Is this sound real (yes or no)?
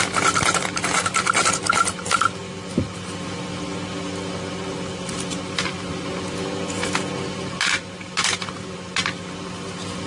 yes